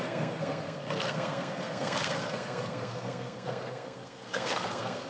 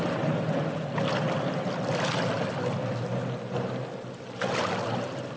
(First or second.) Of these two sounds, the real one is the second